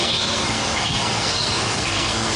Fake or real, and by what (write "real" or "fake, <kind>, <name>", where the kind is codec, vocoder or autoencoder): fake, codec, SNAC